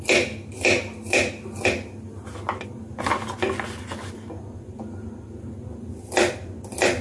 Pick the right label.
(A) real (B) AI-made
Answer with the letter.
A